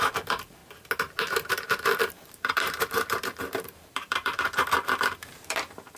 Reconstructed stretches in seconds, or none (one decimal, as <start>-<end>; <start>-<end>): 0.0-0.6; 1.5-6.0